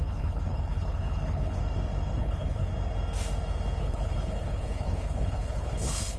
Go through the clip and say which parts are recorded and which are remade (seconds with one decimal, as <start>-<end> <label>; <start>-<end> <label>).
0.0-1.6 remade; 1.6-2.2 recorded; 2.2-2.7 remade; 2.7-3.8 recorded; 3.8-6.2 remade